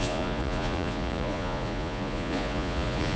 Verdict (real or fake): fake